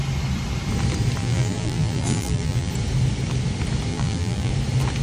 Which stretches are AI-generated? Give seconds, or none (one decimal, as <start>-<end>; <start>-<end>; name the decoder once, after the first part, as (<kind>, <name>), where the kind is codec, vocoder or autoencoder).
1.2-2.7 (vocoder, BigVGAN v2); 3.9-4.5